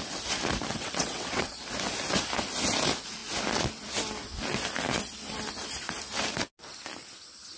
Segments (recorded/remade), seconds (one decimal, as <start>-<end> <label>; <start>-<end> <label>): 0.0-0.7 recorded; 0.7-1.6 remade; 1.6-7.6 recorded